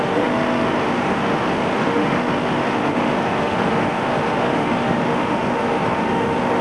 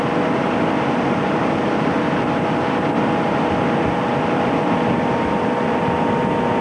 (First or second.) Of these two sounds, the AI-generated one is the first